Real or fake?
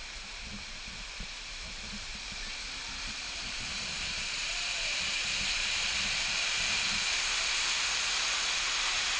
fake